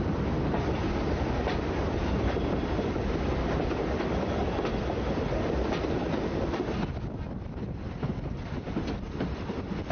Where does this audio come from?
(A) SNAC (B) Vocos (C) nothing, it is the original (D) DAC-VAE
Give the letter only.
C